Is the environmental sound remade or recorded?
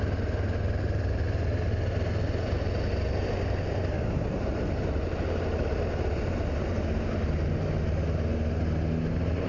recorded